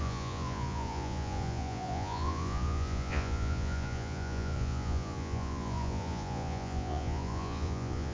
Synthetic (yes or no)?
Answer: yes